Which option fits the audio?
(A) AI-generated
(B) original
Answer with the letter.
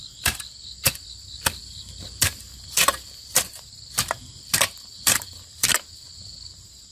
A